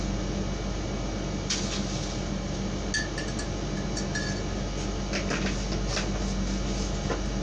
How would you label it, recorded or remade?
recorded